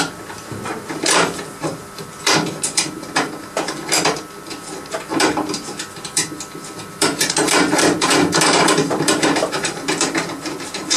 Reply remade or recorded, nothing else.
remade